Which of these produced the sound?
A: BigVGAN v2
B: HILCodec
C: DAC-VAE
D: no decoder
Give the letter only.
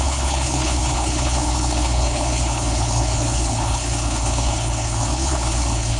B